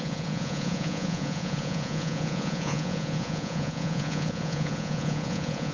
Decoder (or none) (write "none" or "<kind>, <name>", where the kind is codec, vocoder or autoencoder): vocoder, Vocos